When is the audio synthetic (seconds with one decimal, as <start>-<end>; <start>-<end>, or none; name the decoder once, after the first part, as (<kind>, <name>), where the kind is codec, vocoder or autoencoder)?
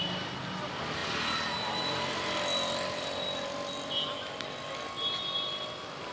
none